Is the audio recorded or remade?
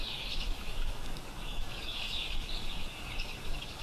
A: remade